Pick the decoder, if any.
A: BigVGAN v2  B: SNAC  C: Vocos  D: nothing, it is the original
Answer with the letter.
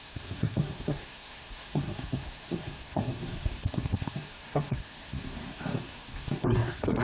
B